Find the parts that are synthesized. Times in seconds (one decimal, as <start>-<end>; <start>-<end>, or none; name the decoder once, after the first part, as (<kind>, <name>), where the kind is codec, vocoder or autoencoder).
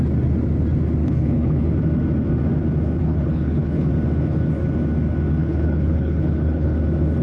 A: 1.0-1.7 (codec, HILCodec); 3.0-3.9; 5.4-6.8